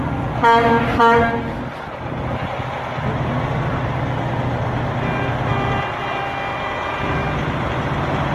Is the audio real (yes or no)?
yes